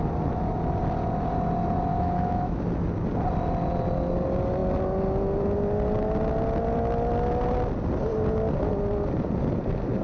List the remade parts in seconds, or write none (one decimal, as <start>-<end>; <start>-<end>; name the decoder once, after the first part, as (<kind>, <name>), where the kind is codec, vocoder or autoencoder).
1.9-2.6 (autoencoder, DAC-VAE)